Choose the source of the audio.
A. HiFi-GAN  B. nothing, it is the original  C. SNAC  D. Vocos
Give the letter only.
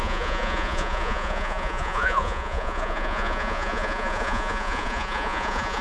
D